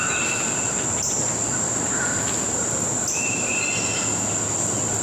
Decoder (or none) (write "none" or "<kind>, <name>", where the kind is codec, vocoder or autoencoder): none